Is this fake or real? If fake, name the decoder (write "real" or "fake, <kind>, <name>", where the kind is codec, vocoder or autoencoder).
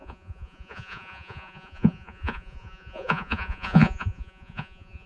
fake, vocoder, Vocos